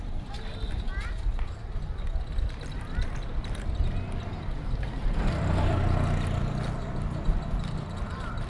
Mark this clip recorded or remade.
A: recorded